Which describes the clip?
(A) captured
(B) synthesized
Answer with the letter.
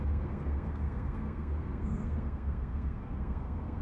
B